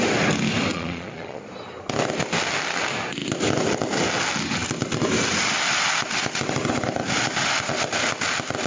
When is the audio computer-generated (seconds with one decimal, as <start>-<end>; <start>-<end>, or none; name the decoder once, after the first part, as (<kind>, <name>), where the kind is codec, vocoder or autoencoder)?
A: 0.7-1.4 (vocoder, Vocos)